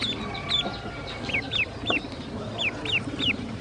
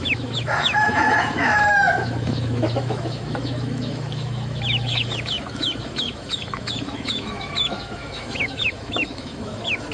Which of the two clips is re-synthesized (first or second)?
second